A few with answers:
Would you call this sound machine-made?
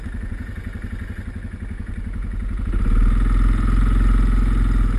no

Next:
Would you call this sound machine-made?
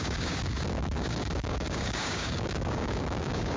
yes